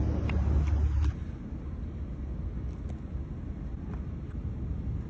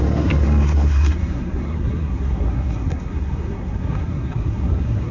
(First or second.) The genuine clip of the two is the first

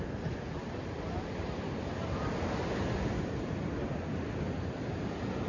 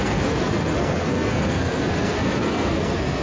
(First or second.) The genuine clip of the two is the first